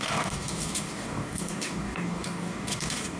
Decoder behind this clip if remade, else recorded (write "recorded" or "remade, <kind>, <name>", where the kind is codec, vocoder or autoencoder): remade, codec, DAC